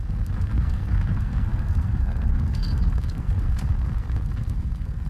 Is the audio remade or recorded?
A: remade